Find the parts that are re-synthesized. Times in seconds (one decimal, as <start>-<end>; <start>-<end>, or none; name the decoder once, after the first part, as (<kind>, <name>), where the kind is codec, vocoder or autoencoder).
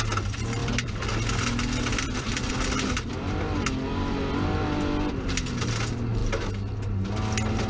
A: 0.6-1.2 (vocoder, BigVGAN v2); 1.9-2.5